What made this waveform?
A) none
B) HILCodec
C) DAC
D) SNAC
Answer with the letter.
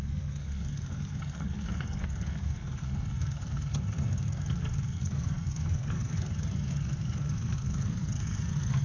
D